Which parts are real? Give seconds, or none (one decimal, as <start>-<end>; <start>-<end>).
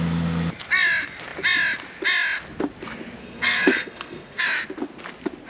0.0-3.2; 4.4-5.5